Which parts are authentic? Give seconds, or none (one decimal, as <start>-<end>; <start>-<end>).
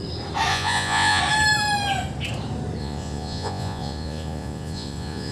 0.0-0.5; 1.2-2.8